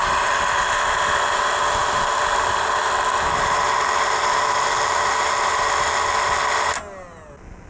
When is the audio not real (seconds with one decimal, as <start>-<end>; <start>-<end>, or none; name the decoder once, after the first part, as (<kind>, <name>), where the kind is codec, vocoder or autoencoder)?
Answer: 1.8-2.8 (vocoder, BigVGAN v2)